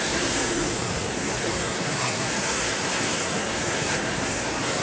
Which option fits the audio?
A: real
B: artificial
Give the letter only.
B